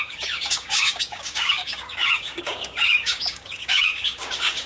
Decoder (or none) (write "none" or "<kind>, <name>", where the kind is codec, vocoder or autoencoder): codec, DAC